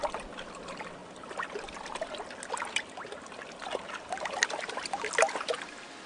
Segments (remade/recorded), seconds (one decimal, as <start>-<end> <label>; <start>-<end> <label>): 0.0-6.1 recorded